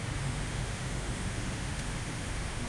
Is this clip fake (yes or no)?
yes